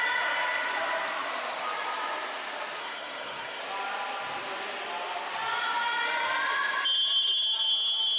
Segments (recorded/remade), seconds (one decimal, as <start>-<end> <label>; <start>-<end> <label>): 0.0-2.8 recorded; 2.8-3.6 remade; 3.6-8.2 recorded